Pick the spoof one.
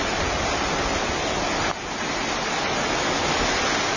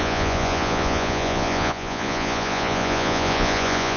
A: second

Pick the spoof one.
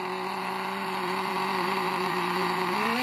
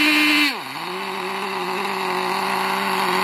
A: first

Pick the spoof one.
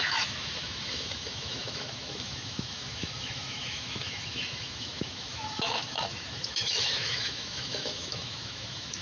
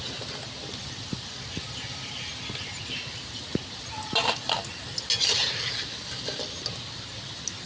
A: first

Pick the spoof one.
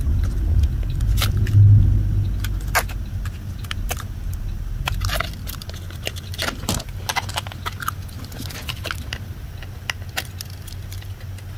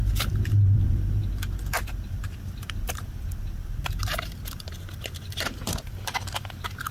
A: second